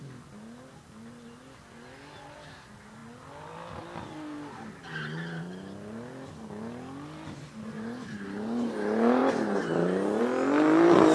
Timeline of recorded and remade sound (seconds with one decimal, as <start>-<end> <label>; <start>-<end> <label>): 0.0-11.1 recorded